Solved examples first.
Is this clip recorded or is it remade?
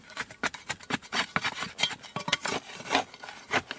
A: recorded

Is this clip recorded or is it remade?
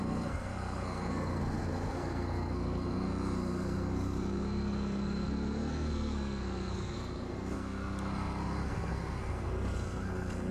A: remade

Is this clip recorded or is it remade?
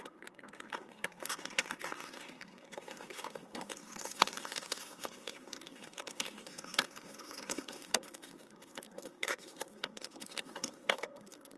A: remade